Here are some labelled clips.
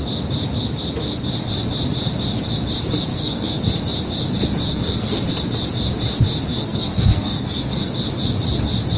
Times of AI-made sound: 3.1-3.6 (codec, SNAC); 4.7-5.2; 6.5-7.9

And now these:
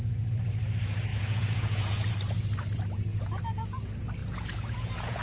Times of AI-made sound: 1.1-2.1 (vocoder, Vocos); 3.1-3.8; 4.2-5.2

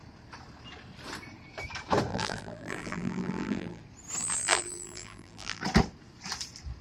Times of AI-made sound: 2.1-3.8 (vocoder, BigVGAN v2); 4.2-5.6

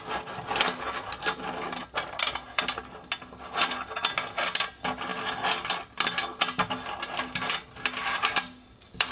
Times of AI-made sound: 1.8-2.6 (vocoder, BigVGAN v2); 5.1-9.1

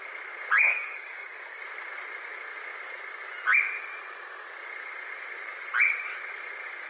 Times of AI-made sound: 0.7-1.6 (codec, DAC)

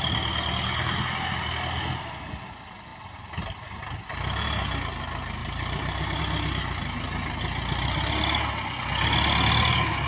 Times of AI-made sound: 5.4-6.2 (vocoder, BigVGAN v2)

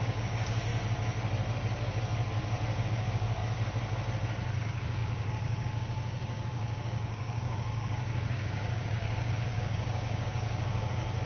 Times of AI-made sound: 0.0-0.7 (codec, DAC); 2.9-3.4; 4.6-11.3